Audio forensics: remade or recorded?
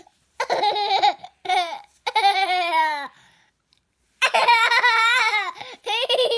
remade